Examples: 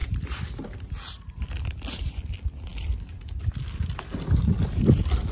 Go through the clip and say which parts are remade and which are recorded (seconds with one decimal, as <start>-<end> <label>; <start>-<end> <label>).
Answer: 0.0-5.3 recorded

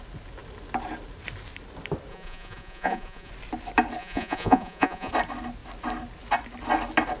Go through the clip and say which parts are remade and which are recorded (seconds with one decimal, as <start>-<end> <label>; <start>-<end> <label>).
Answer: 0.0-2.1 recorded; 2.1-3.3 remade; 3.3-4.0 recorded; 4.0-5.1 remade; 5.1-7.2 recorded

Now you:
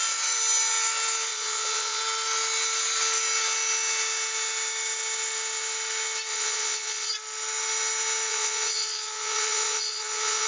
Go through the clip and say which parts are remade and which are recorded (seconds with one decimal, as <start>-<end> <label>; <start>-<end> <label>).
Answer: 0.0-1.3 recorded; 1.3-2.0 remade; 2.0-6.3 recorded; 6.3-7.1 remade; 7.1-8.3 recorded; 8.3-10.5 remade

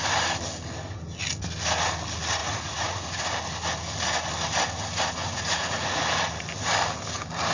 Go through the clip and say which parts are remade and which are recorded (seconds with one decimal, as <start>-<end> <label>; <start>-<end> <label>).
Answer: 0.0-2.4 recorded; 2.4-3.2 remade; 3.2-5.2 recorded; 5.2-6.0 remade; 6.0-7.5 recorded

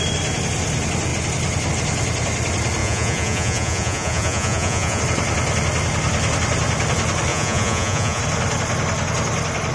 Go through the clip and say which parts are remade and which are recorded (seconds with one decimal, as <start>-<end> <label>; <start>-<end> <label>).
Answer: 0.0-2.8 recorded; 2.8-5.0 remade; 5.0-7.3 recorded; 7.3-8.2 remade; 8.2-9.7 recorded

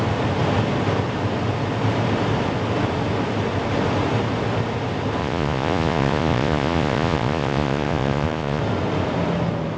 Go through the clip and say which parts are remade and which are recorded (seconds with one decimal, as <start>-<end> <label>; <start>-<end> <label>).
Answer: 0.0-5.2 recorded; 5.2-8.6 remade; 8.6-9.8 recorded

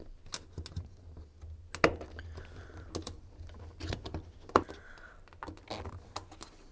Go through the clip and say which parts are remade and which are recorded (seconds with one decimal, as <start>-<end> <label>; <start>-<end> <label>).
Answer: 0.0-6.7 recorded